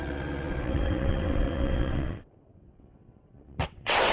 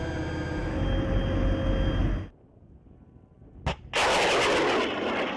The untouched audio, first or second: second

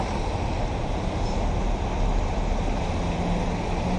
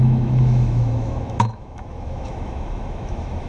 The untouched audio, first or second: first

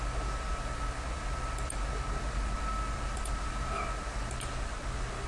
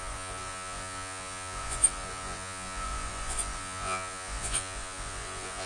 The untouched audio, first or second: first